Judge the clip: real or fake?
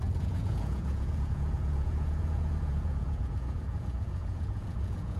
fake